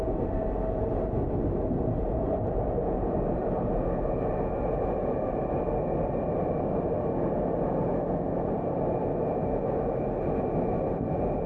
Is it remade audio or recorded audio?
recorded